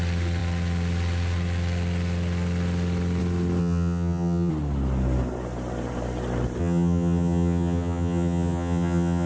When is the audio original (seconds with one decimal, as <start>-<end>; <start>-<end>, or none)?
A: 0.0-3.6; 4.5-6.6